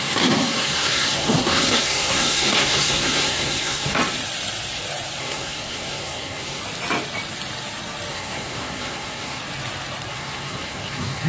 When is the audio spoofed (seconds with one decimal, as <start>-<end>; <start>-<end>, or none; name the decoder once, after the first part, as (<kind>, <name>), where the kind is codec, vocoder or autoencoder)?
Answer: 0.0-4.0 (codec, SNAC); 5.2-6.6; 8.1-9.4; 10.1-11.3

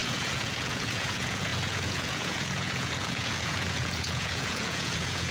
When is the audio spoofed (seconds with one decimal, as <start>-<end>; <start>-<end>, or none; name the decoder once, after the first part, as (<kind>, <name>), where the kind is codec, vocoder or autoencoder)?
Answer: 0.0-5.3 (vocoder, Vocos)

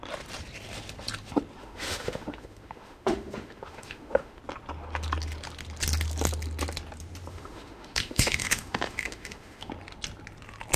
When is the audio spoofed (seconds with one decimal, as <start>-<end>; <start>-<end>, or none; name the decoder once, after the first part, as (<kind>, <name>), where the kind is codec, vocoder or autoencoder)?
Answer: 1.6-4.4 (autoencoder, DAC-VAE); 7.3-9.7